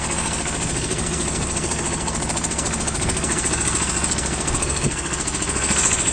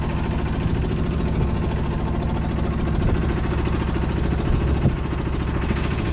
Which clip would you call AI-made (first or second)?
first